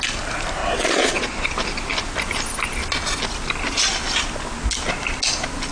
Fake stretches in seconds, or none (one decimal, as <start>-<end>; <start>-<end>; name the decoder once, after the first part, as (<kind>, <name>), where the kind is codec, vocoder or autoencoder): 0.6-1.5 (vocoder, Vocos)